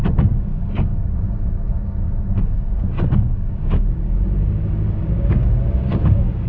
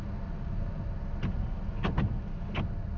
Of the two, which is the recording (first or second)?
second